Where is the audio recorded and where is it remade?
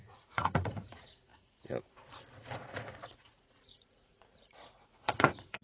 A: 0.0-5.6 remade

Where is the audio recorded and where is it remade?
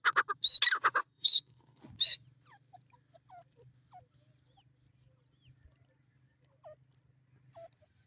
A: 0.0-1.0 recorded; 1.0-1.8 remade; 1.8-8.1 recorded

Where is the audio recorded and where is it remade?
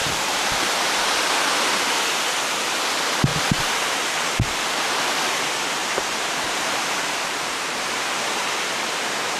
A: 0.0-0.5 remade; 0.5-3.3 recorded; 3.3-5.0 remade; 5.0-5.8 recorded; 5.8-8.1 remade; 8.1-9.4 recorded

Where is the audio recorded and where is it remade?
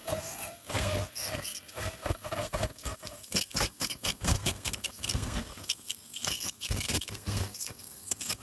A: 0.0-8.4 remade